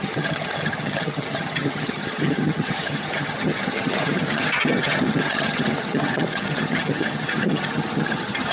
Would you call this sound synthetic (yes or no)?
yes